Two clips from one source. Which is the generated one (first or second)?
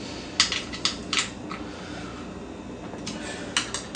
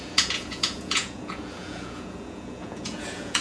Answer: second